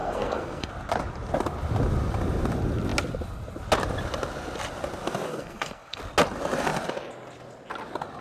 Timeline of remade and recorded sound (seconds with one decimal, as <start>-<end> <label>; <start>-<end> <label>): 0.0-0.7 remade; 0.7-5.3 recorded; 5.3-6.0 remade; 6.0-8.2 recorded

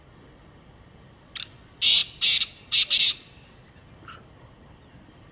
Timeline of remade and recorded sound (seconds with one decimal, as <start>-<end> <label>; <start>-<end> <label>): 0.0-5.3 recorded

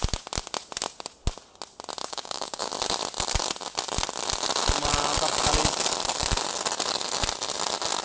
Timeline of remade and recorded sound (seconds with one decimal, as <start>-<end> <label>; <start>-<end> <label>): 0.0-2.0 recorded; 2.0-2.7 remade; 2.7-8.0 recorded

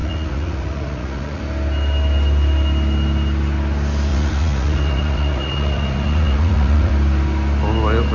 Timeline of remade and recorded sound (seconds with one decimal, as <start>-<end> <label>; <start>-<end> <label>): 0.0-1.4 remade; 1.4-4.1 recorded; 4.1-6.9 remade; 6.9-8.1 recorded

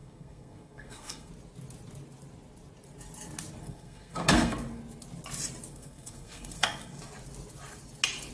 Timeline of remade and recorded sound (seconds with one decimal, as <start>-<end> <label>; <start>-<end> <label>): 0.0-1.3 remade; 1.3-3.6 recorded; 3.6-4.8 remade; 4.8-5.7 recorded; 5.7-7.0 remade; 7.0-8.3 recorded

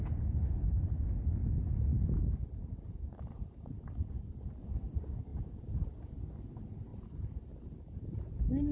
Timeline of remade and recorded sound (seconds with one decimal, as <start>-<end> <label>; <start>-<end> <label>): 0.0-1.9 recorded; 1.9-3.8 remade; 3.8-6.9 recorded; 6.9-7.8 remade; 7.8-8.7 recorded

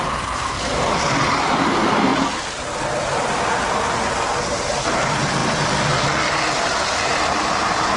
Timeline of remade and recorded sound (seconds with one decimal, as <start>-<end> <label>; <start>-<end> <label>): 0.0-2.1 remade; 2.1-3.0 recorded; 3.0-5.4 remade; 5.4-7.1 recorded; 7.1-8.0 remade

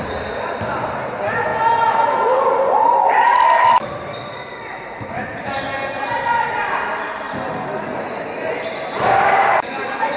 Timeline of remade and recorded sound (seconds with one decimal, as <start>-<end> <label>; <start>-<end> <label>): 0.0-1.5 recorded; 1.5-4.5 remade; 4.5-6.3 recorded; 6.3-10.2 remade